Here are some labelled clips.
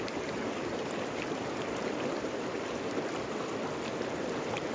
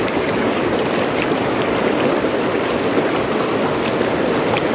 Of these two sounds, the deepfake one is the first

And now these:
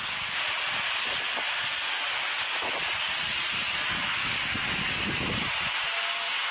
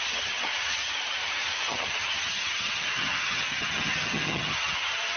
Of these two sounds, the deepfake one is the second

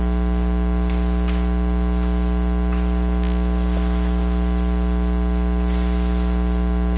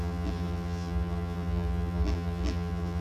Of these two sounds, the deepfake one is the second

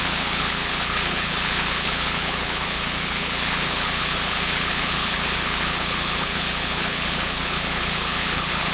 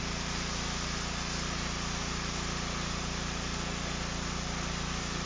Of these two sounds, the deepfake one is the first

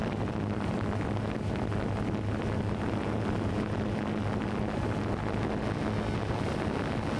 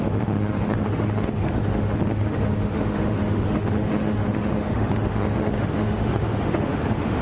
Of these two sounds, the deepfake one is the second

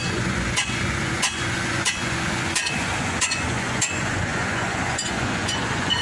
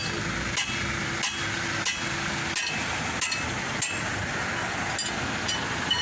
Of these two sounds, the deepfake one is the first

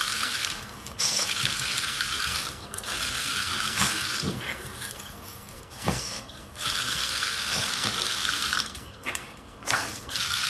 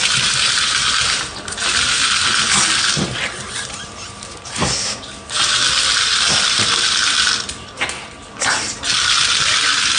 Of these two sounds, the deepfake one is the first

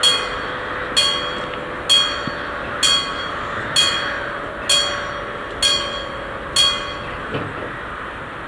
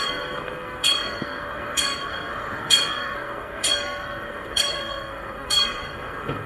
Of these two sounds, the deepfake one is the second